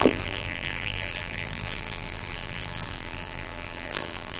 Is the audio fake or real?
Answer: fake